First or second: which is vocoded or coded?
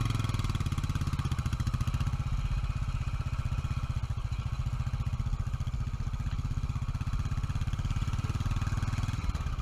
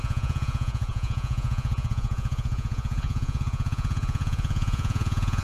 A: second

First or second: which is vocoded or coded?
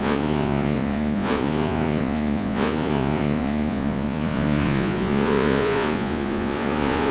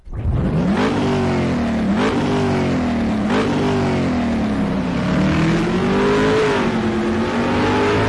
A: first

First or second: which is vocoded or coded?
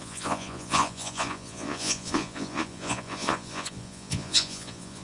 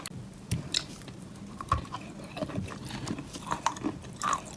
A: first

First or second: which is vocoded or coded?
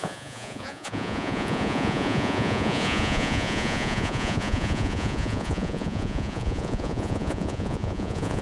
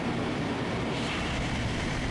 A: first